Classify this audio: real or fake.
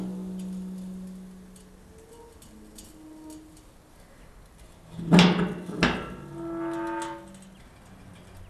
real